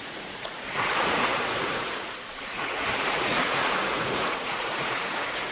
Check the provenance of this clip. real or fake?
fake